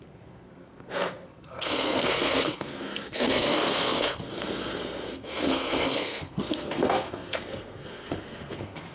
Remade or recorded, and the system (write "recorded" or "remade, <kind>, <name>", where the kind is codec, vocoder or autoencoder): remade, codec, SNAC